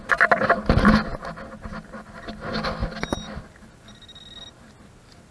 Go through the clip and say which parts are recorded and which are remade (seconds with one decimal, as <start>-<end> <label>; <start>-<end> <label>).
0.0-5.3 recorded